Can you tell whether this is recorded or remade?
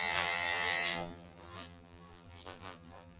remade